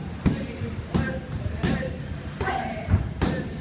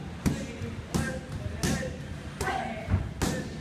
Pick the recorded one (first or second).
second